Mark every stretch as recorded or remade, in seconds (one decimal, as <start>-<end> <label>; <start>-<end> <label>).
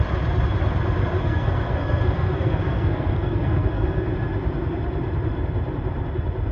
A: 0.0-1.2 recorded; 1.2-4.1 remade; 4.1-6.5 recorded